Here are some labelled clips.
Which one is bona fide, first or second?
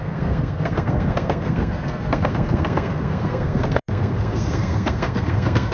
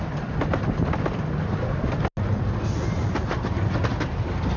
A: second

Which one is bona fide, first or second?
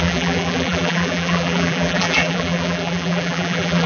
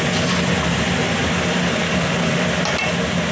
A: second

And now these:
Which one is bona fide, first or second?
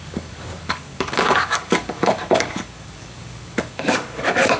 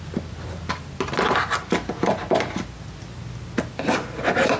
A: second